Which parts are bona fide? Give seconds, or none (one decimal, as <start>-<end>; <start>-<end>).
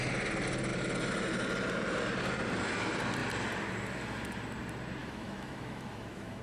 0.0-5.0